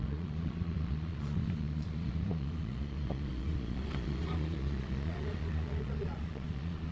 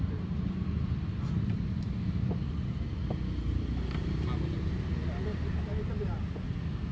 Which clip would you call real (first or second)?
second